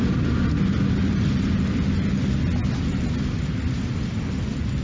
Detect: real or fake real